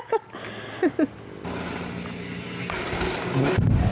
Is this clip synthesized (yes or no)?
no